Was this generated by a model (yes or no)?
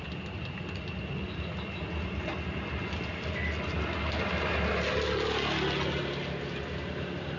no